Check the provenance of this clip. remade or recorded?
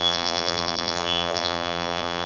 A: remade